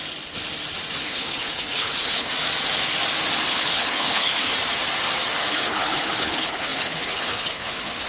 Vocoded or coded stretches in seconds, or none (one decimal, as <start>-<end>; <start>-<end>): 1.0-2.3; 3.5-4.5; 5.3-8.1